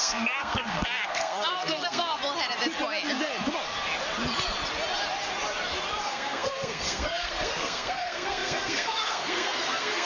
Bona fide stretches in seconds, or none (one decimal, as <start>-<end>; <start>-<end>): 2.2-6.0